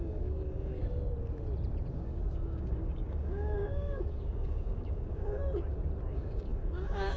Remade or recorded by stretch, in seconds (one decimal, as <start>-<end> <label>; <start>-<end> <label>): 0.0-0.8 remade; 0.8-1.9 recorded; 1.9-5.4 remade; 5.4-6.1 recorded; 6.1-7.2 remade